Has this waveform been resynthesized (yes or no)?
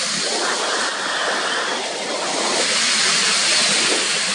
no